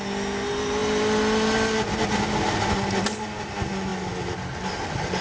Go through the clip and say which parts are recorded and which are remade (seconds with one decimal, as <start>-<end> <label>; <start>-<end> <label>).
0.0-5.2 recorded